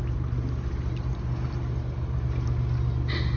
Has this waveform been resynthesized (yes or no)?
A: no